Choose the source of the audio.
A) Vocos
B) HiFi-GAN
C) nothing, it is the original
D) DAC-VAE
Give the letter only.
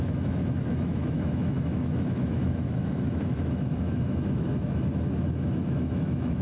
D